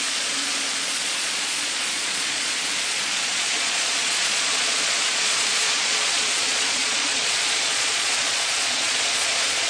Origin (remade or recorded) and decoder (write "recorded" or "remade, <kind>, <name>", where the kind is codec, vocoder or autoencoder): remade, vocoder, Vocos